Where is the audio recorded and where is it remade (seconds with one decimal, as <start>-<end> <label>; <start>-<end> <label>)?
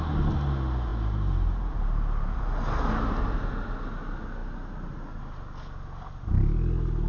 0.0-0.9 recorded; 0.9-2.4 remade; 2.4-7.1 recorded